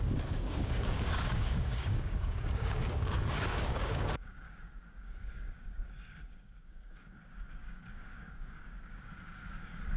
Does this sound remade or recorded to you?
remade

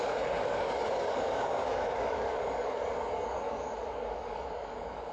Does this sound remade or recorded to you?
remade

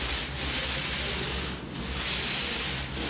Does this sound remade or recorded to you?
recorded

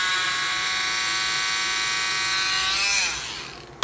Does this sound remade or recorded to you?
recorded